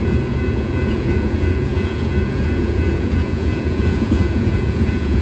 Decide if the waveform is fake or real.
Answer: fake